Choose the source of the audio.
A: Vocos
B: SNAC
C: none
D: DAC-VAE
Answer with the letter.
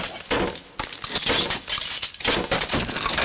C